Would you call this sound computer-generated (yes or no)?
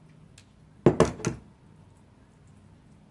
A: no